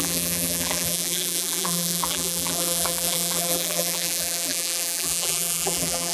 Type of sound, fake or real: fake